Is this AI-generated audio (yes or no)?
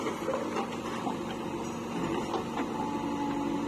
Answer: no